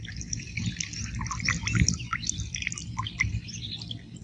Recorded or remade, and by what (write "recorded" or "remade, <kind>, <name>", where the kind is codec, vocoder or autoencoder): recorded